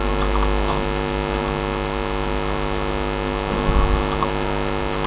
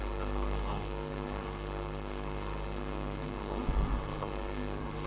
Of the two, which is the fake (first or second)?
second